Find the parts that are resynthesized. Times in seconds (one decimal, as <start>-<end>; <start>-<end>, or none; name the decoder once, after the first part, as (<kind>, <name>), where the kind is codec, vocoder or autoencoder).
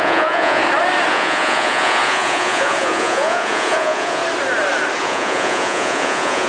0.0-0.6 (vocoder, Vocos); 1.1-4.2; 5.0-6.5